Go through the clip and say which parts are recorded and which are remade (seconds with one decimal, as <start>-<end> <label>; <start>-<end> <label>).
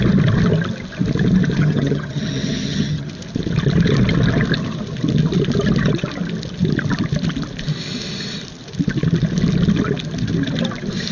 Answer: 0.0-1.6 recorded; 1.6-3.1 remade; 3.1-11.1 recorded